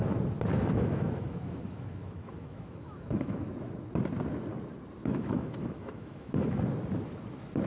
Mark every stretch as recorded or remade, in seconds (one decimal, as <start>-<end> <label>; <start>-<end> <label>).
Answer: 0.0-0.5 recorded; 0.5-3.5 remade; 3.5-5.0 recorded; 5.0-6.6 remade; 6.6-7.7 recorded